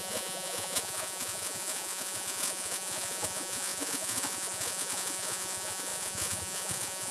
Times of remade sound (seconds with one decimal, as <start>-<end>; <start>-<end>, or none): 0.0-7.1